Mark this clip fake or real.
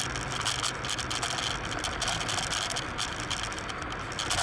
real